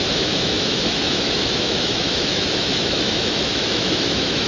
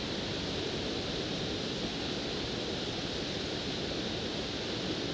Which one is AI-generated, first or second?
first